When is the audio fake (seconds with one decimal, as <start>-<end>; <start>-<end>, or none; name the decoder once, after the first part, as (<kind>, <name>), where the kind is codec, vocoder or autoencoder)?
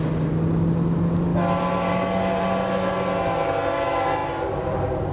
none